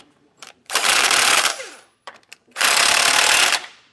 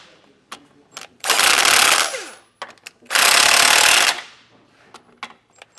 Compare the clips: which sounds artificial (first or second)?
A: first